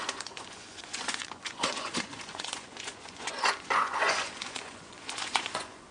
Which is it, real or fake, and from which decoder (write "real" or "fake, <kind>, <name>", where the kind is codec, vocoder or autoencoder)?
fake, vocoder, Vocos